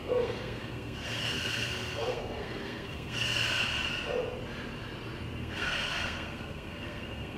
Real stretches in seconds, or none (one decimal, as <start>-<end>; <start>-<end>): 3.7-5.4